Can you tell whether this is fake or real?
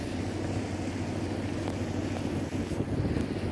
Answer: real